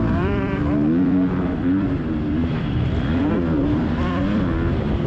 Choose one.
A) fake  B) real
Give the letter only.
A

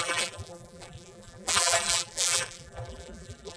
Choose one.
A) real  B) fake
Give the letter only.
B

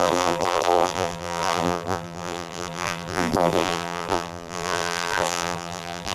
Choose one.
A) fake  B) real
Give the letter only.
A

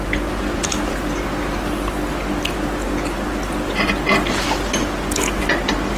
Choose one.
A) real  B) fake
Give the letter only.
A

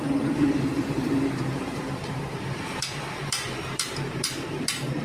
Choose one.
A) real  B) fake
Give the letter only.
B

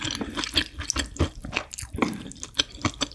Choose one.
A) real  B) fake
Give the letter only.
A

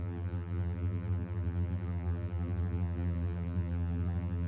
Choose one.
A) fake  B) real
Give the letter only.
A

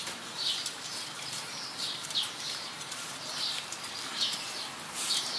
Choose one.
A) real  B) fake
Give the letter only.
B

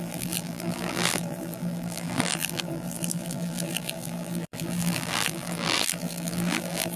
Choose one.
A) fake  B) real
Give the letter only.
A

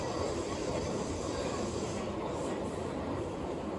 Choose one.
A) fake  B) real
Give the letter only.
A